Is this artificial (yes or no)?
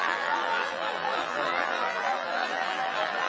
yes